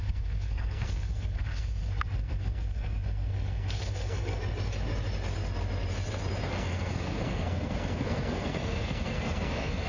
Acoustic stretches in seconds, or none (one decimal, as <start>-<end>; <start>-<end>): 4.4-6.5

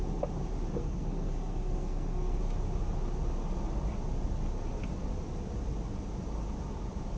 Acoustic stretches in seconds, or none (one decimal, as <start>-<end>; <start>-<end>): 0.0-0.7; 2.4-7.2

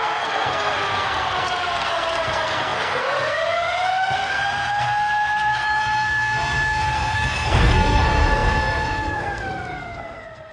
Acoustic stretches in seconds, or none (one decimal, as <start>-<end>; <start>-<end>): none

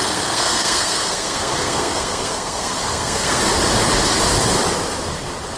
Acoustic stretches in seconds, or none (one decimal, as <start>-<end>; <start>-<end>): 3.4-5.6

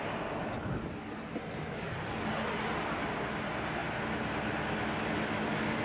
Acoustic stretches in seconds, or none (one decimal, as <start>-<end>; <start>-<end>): 0.0-5.8